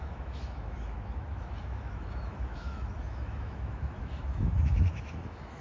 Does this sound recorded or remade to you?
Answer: remade